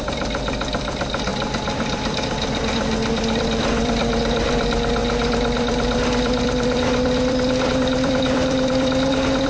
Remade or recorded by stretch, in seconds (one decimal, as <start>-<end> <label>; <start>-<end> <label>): 0.0-9.5 remade